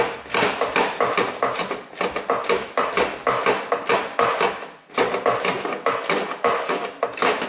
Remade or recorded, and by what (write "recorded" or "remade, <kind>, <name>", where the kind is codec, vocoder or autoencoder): recorded